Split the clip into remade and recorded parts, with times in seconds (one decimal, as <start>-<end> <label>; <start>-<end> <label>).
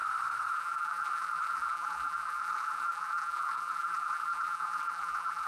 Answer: 0.0-0.5 recorded; 0.5-5.5 remade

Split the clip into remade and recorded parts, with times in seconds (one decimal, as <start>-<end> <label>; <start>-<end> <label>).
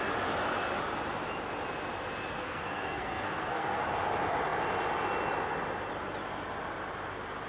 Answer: 0.0-2.3 recorded; 2.3-3.8 remade; 3.8-7.5 recorded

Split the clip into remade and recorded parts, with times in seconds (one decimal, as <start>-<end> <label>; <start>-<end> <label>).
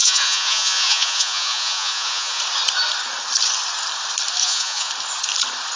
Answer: 0.0-2.4 remade; 2.4-4.4 recorded; 4.4-4.9 remade; 4.9-5.8 recorded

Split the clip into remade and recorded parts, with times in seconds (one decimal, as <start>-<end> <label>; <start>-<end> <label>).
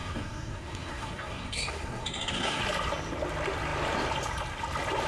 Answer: 0.0-2.6 remade; 2.6-5.1 recorded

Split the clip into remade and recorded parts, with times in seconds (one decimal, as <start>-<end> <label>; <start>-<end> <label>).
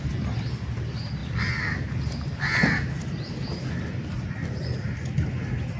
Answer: 0.0-5.8 recorded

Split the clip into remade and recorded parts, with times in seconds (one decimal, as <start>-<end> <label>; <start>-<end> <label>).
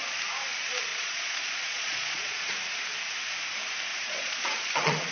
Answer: 0.0-0.9 recorded; 0.9-2.6 remade; 2.6-3.9 recorded; 3.9-5.1 remade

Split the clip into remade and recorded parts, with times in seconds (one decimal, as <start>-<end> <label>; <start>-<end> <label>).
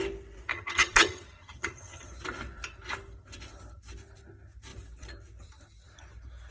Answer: 0.0-0.5 recorded; 0.5-2.1 remade; 2.1-6.5 recorded